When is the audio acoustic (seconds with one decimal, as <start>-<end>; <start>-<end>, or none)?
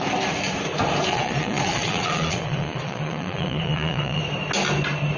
0.0-1.1; 4.2-5.2